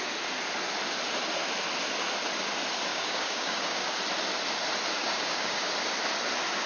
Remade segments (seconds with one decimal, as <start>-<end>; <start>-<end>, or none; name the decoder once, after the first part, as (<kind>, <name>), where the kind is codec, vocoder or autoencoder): 2.9-4.0 (codec, DAC); 5.0-5.7